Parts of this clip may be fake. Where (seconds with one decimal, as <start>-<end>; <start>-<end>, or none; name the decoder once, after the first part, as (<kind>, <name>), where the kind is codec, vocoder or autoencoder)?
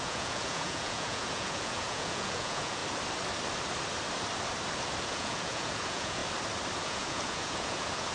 0.0-2.8 (vocoder, Vocos); 5.0-6.2; 6.8-8.1